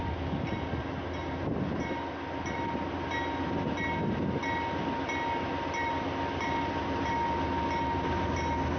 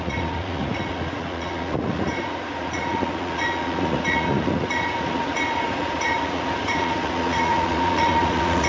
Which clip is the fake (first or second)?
second